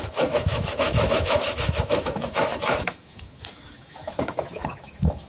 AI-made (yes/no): yes